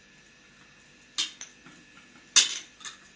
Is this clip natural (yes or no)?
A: yes